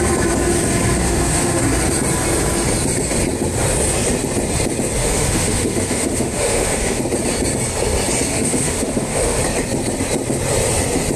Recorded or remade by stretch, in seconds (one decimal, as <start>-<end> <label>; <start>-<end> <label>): 0.0-1.0 recorded; 1.0-1.6 remade; 1.6-5.0 recorded; 5.0-7.0 remade; 7.0-8.3 recorded; 8.3-9.4 remade; 9.4-11.2 recorded